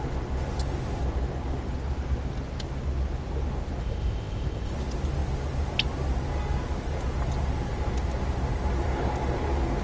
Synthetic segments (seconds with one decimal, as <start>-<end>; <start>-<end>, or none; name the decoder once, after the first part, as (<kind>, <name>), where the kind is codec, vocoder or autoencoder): 3.8-4.7 (codec, ZipCodec)

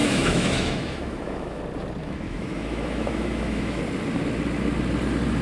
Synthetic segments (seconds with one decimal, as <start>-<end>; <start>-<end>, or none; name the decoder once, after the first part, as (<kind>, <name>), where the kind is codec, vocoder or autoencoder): 0.0-1.6 (autoencoder, DAC-VAE); 2.0-3.8